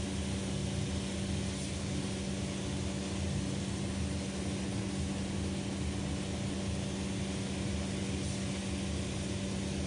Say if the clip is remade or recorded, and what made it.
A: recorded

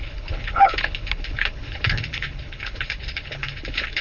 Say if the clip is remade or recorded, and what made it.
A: remade, codec, HILCodec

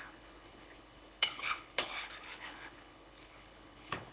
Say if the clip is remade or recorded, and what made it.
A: remade, codec, HILCodec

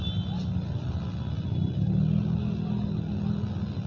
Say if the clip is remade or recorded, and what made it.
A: recorded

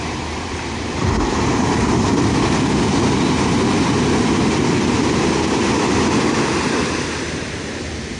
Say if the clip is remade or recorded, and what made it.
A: recorded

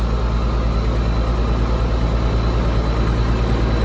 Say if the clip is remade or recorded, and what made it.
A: recorded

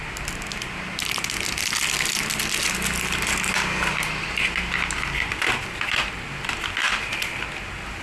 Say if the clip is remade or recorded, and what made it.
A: recorded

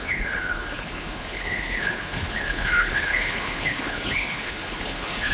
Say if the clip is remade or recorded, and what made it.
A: remade, codec, HILCodec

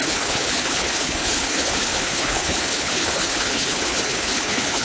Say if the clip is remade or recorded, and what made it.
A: remade, codec, HILCodec